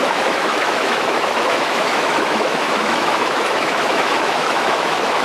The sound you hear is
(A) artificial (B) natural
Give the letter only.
A